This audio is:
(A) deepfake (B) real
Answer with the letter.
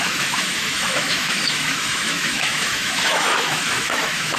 A